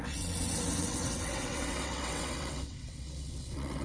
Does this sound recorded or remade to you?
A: remade